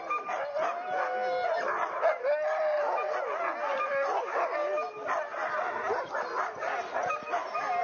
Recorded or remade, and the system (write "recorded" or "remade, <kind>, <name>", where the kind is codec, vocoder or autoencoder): recorded